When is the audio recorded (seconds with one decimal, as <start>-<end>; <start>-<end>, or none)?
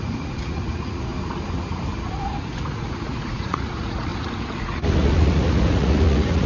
1.1-2.0; 4.1-4.6